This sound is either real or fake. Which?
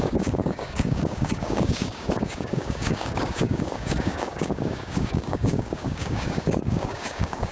fake